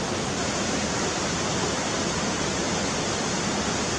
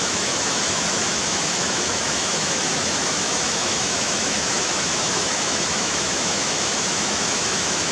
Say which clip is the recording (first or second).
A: first